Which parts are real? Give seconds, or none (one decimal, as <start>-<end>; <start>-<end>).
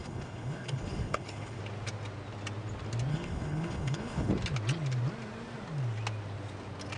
1.6-3.1; 4.3-7.0